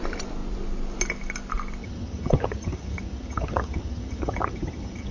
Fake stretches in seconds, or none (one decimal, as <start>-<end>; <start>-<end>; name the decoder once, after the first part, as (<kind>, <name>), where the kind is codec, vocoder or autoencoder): 1.8-5.1 (vocoder, HiFi-GAN)